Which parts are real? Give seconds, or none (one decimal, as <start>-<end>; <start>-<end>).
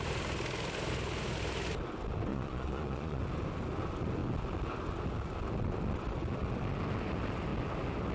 0.0-2.3; 3.2-8.1